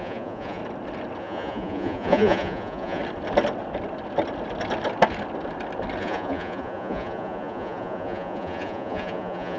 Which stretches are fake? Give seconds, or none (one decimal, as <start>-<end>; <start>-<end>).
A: 0.0-0.6; 1.2-3.0; 6.0-9.6